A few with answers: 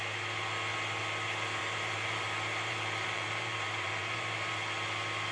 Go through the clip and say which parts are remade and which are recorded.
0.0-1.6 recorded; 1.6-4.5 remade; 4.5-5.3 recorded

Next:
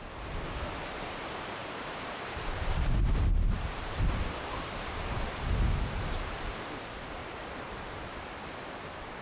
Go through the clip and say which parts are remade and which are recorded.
0.0-1.6 recorded; 1.6-6.4 remade; 6.4-7.2 recorded; 7.2-8.1 remade; 8.1-9.2 recorded

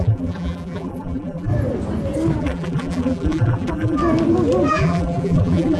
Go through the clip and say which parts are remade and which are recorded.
0.0-1.5 remade; 1.5-2.4 recorded; 2.4-4.0 remade; 4.0-4.7 recorded; 4.7-5.8 remade

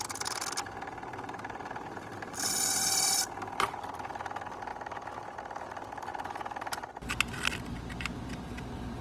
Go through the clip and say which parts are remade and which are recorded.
0.0-0.4 remade; 0.4-2.0 recorded; 2.0-4.7 remade; 4.7-5.4 recorded; 5.4-9.0 remade

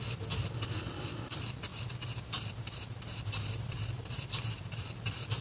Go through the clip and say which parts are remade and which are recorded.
0.0-1.7 recorded; 1.7-4.8 remade; 4.8-5.4 recorded

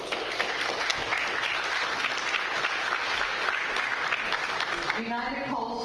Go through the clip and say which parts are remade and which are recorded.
0.0-5.8 recorded

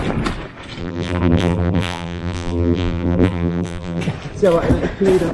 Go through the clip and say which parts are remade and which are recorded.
0.0-0.8 recorded; 0.8-4.0 remade; 4.0-5.3 recorded

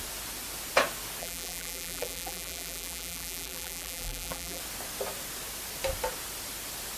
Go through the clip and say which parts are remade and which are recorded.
0.0-1.2 recorded; 1.2-4.6 remade; 4.6-7.0 recorded